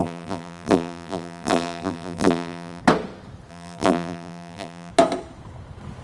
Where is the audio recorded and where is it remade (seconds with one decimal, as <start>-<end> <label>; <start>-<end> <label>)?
0.0-2.8 remade; 2.8-3.5 recorded; 3.5-4.9 remade; 4.9-6.0 recorded